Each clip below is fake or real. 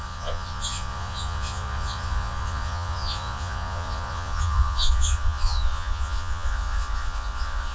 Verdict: fake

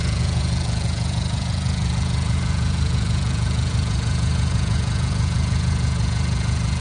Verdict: fake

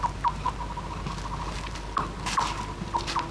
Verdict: real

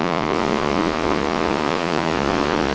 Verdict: fake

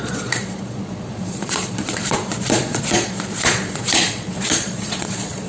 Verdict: fake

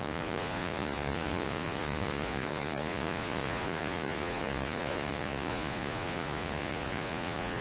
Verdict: fake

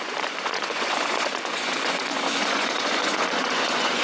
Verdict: fake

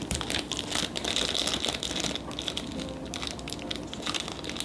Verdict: real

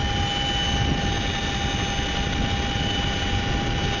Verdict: real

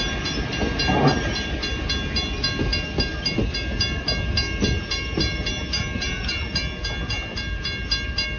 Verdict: real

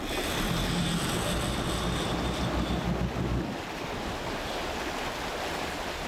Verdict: real